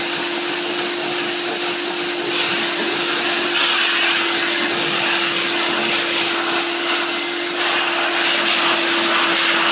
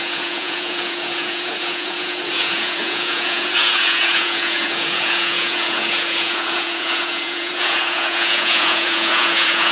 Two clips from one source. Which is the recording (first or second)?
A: first